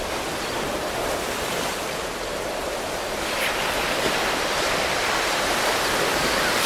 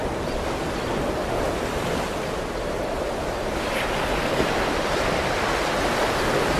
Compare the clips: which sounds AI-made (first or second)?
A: first